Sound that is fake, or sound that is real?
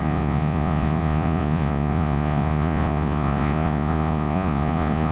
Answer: fake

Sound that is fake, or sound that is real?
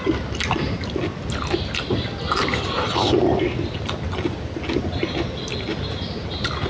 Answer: real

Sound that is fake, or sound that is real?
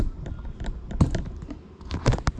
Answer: real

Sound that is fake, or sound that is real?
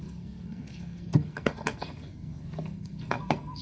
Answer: fake